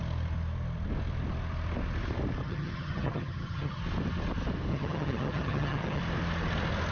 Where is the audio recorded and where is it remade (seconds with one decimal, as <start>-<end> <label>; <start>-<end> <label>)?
0.0-2.4 recorded; 2.4-3.8 remade; 3.8-4.7 recorded; 4.7-6.0 remade; 6.0-6.9 recorded